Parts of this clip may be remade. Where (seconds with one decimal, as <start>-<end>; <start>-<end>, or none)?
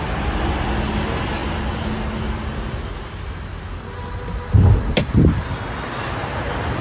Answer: none